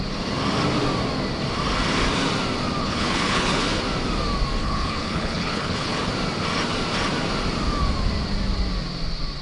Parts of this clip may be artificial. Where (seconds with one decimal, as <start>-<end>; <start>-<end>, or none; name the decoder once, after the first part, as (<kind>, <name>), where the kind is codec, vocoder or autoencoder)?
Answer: 2.8-3.8 (codec, HILCodec); 4.6-6.1